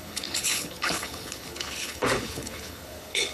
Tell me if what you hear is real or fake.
fake